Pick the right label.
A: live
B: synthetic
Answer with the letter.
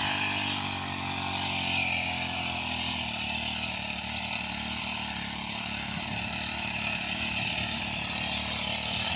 A